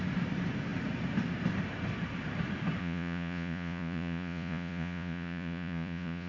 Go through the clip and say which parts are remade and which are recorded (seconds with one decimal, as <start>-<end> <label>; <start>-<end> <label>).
0.0-2.8 recorded; 2.8-6.3 remade